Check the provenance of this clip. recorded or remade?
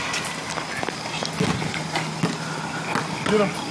recorded